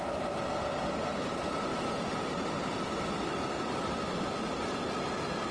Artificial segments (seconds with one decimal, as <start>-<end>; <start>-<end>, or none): none